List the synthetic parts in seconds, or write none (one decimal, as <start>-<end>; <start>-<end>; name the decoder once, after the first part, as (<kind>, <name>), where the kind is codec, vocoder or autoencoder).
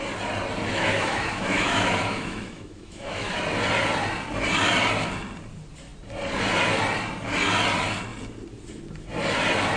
0.7-3.3 (autoencoder, DAC-VAE)